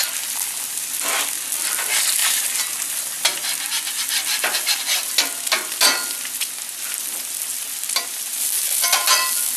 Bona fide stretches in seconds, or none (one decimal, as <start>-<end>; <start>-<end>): 0.0-9.6